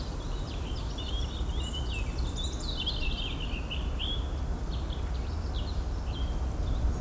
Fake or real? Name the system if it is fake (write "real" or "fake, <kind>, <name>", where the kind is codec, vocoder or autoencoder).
real